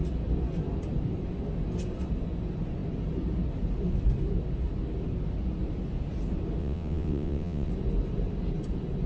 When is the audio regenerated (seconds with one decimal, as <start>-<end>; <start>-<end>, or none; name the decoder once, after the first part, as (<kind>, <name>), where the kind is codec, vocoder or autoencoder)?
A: 6.6-7.7 (vocoder, WaveNeXt)